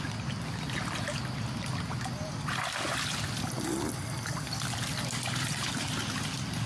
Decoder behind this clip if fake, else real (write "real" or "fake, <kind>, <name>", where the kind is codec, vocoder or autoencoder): real